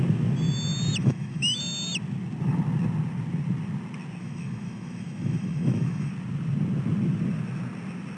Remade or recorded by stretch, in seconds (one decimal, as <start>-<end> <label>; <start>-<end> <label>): 0.0-1.0 recorded; 1.0-1.6 remade; 1.6-4.2 recorded; 4.2-6.1 remade; 6.1-8.2 recorded